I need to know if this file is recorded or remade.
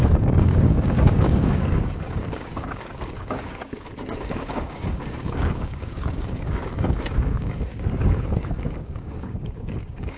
remade